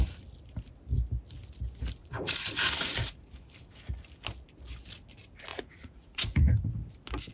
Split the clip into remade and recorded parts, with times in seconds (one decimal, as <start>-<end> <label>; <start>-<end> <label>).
0.0-2.0 recorded; 2.0-3.3 remade; 3.3-5.5 recorded; 5.5-6.7 remade; 6.7-7.3 recorded